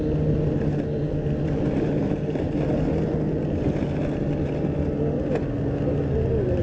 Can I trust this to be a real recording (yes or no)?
yes